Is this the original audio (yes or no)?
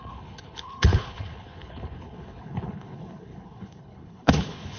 no